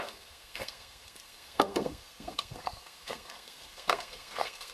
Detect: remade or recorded remade